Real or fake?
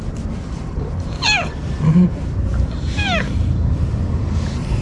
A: fake